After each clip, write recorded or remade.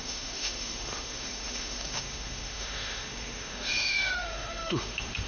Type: remade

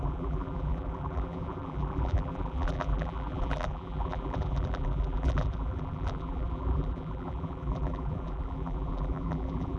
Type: remade